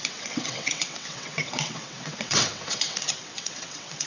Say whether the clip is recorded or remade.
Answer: remade